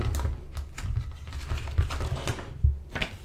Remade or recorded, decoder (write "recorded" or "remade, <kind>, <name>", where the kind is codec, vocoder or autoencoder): recorded